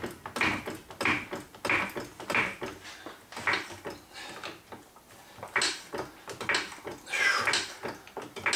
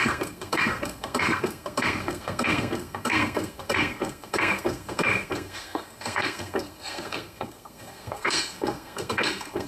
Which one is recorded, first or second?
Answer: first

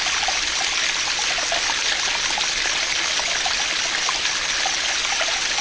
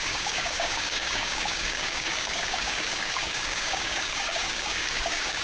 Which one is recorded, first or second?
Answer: first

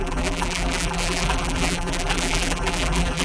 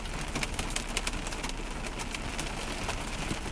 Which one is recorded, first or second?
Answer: second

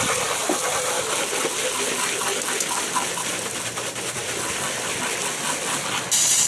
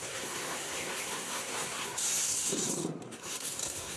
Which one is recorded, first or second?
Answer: first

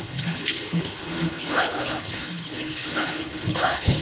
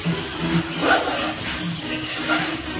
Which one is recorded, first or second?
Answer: second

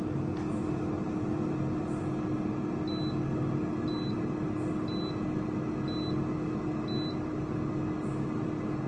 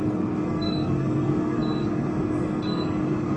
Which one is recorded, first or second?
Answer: first